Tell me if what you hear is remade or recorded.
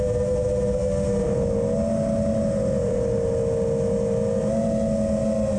recorded